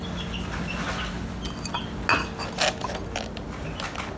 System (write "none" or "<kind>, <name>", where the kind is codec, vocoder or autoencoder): none